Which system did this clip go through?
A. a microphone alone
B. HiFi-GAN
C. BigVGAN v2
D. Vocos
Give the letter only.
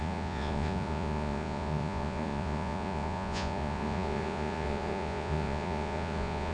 D